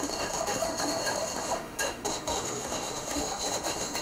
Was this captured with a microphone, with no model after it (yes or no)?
no